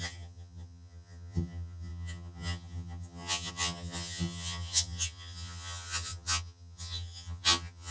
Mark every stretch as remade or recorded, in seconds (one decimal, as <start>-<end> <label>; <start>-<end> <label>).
0.0-7.9 remade